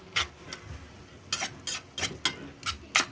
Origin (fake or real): real